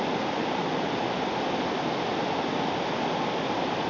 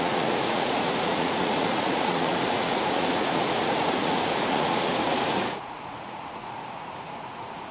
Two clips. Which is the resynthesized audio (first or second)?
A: second